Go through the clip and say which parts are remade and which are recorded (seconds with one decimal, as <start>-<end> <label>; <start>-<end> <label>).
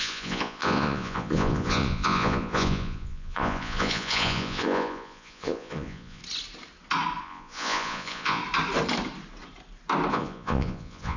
0.0-6.2 remade; 6.2-7.2 recorded; 7.2-8.4 remade; 8.4-10.1 recorded; 10.1-11.2 remade